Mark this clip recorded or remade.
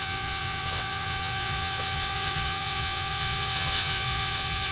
remade